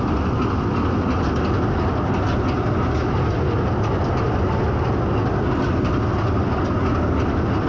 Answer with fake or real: real